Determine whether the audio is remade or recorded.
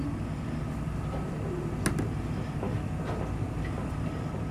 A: recorded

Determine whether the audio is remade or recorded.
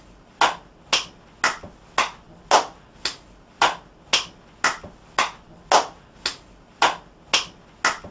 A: recorded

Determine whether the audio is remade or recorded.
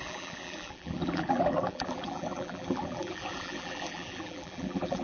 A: remade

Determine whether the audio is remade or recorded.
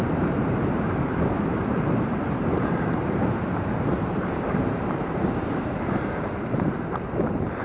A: remade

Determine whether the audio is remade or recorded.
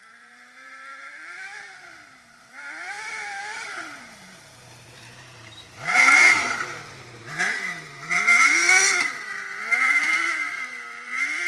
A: remade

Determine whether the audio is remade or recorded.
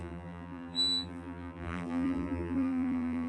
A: remade